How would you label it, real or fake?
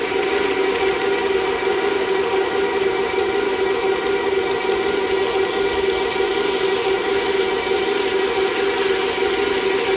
real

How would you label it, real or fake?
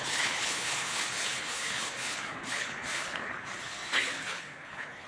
fake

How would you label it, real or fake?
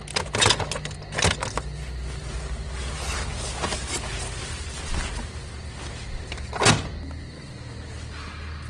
real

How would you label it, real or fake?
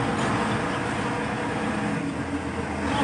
real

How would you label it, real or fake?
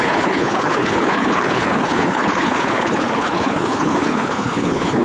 fake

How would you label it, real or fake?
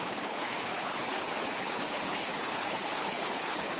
fake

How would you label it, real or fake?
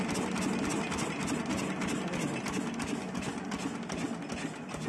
real